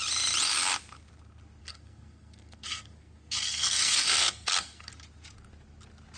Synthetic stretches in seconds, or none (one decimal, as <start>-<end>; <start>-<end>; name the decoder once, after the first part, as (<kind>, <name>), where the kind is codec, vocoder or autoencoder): 1.6-4.9 (codec, SNAC)